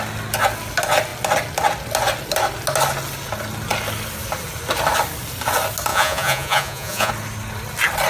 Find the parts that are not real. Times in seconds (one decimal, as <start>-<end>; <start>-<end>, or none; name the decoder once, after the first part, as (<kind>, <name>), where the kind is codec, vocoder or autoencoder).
5.9-7.1 (vocoder, Vocos)